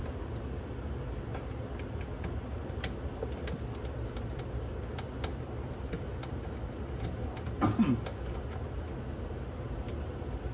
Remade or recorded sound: recorded